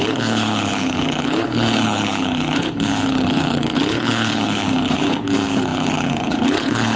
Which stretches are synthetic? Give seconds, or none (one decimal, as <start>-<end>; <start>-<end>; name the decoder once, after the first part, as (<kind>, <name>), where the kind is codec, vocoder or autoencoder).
0.0-7.0 (codec, HILCodec)